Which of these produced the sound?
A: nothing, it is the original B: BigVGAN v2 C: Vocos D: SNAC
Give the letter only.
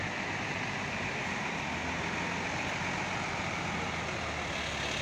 A